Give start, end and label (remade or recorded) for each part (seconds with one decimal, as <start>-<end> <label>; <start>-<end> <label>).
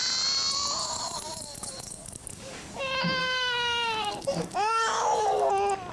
0.0-0.8 recorded; 0.8-2.8 remade; 2.8-3.2 recorded; 3.2-5.5 remade; 5.5-5.9 recorded